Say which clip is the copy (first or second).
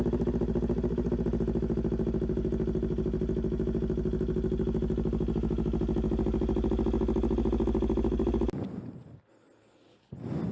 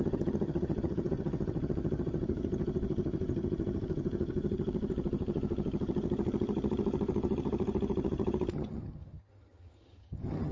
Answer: second